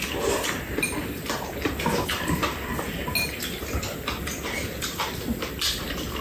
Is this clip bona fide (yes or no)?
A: yes